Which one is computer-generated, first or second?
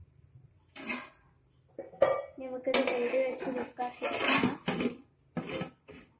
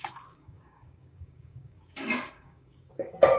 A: second